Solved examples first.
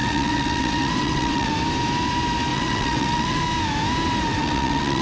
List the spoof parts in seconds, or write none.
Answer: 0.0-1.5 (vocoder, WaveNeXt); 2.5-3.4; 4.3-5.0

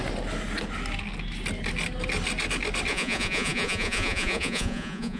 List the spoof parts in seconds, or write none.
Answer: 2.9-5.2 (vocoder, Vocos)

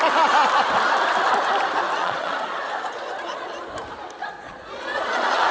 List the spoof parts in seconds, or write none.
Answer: 2.0-3.7 (vocoder, Vocos); 4.2-5.5

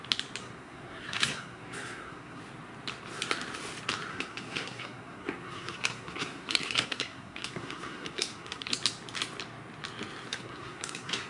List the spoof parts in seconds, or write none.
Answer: 0.4-2.4 (codec, SNAC); 4.1-8.7; 10.3-11.3

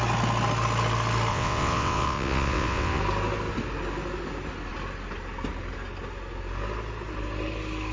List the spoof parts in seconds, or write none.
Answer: 1.3-3.0 (vocoder, WaveNeXt)

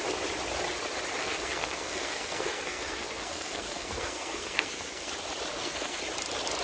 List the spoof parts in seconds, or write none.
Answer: 1.2-5.1 (codec, SNAC); 5.5-6.0